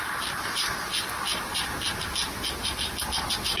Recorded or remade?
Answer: recorded